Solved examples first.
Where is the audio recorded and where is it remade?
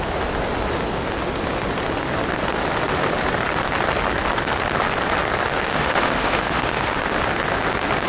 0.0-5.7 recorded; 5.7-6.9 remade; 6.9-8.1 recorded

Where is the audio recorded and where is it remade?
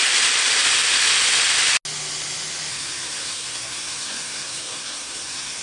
0.0-2.7 recorded; 2.7-5.6 remade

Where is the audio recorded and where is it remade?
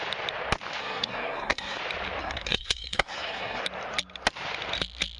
0.0-0.8 recorded; 0.8-1.8 remade; 1.8-2.2 recorded; 2.2-3.6 remade; 3.6-5.2 recorded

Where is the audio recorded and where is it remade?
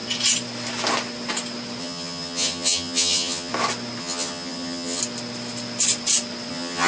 0.0-1.8 recorded; 1.8-3.5 remade; 3.5-4.0 recorded; 4.0-5.0 remade; 5.0-6.5 recorded; 6.5-6.9 remade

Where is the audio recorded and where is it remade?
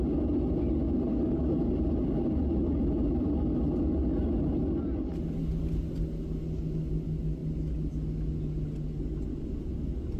0.0-1.1 recorded; 1.1-1.7 remade; 1.7-10.2 recorded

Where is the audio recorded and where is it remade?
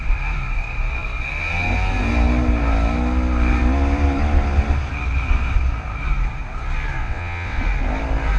0.0-7.0 recorded; 7.0-7.6 remade; 7.6-8.4 recorded